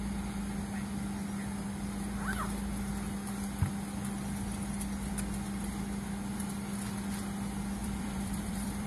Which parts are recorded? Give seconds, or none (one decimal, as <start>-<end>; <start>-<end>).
0.0-7.8